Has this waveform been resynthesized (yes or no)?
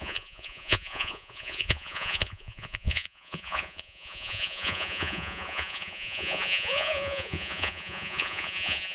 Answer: yes